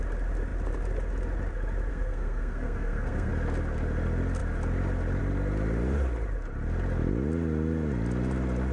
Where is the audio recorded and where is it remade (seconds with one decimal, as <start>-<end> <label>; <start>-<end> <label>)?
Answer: 0.0-1.9 recorded; 1.9-3.3 remade; 3.3-8.7 recorded